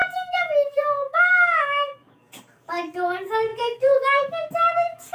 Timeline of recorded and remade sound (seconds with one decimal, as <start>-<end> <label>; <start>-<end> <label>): 0.0-5.1 remade